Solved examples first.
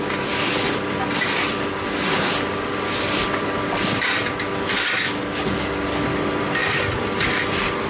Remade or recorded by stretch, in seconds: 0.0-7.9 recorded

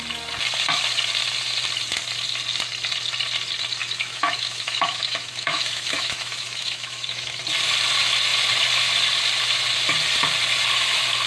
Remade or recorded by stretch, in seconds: 0.0-3.8 recorded; 3.8-7.4 remade; 7.4-11.3 recorded

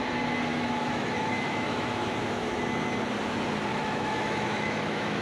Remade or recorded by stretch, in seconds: 0.0-0.5 recorded; 0.5-2.6 remade; 2.6-3.7 recorded; 3.7-5.2 remade

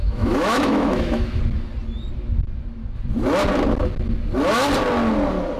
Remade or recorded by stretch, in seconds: 0.0-1.4 remade; 1.4-5.6 recorded

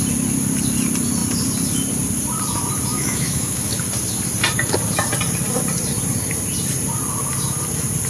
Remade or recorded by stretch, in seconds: 0.0-2.9 recorded; 2.9-3.7 remade; 3.7-8.1 recorded

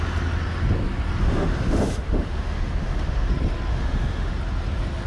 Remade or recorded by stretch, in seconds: 0.0-1.2 recorded; 1.2-3.3 remade; 3.3-3.7 recorded; 3.7-4.3 remade; 4.3-5.1 recorded

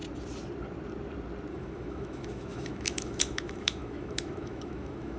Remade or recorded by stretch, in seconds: 0.0-1.5 recorded; 1.5-5.2 remade